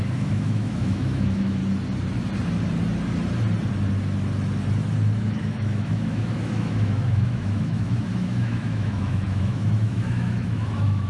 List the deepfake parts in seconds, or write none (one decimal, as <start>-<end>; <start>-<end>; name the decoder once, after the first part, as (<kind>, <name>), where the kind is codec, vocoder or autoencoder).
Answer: 0.0-1.6 (autoencoder, DAC-VAE); 5.2-11.1